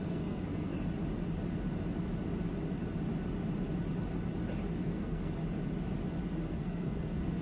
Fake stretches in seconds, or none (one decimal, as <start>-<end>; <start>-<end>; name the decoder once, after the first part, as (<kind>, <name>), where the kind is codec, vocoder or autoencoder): 0.0-0.7 (codec, SNAC); 4.7-5.4; 6.5-7.4